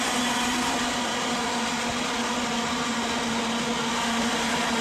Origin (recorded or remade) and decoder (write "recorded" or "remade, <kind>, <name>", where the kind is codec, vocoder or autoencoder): recorded